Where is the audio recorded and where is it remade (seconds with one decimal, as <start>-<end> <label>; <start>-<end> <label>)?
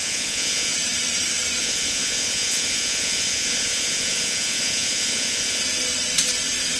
0.0-0.7 remade; 0.7-1.6 recorded; 1.6-5.6 remade; 5.6-6.8 recorded